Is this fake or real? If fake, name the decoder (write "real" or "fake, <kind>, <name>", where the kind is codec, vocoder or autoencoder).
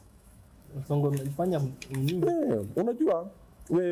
fake, autoencoder, DAC-VAE